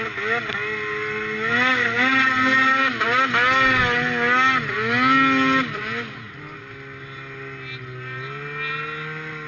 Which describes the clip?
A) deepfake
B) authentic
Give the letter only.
B